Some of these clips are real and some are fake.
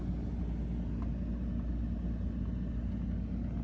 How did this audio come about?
real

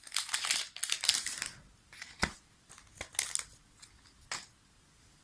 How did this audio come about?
real